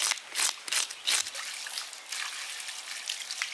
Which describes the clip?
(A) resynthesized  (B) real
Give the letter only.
B